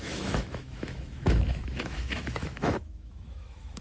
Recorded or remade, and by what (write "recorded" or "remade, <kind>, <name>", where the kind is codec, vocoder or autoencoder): remade, autoencoder, DAC-VAE